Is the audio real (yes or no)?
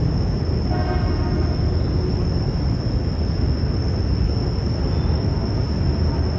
yes